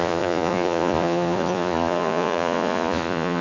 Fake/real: fake